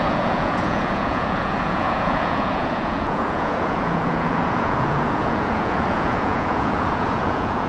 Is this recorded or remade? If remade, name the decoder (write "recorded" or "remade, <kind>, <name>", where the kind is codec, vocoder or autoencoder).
remade, vocoder, Vocos